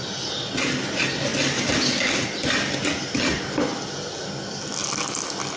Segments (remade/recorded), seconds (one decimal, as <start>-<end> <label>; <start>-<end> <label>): 0.0-5.6 recorded